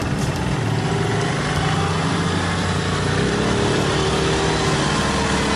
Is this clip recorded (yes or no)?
yes